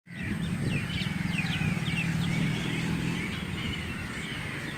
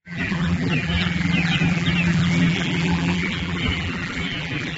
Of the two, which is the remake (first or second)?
second